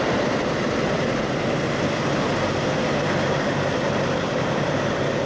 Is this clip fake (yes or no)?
yes